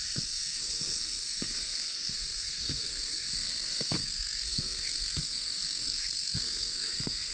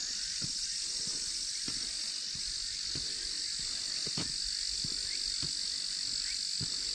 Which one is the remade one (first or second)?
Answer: first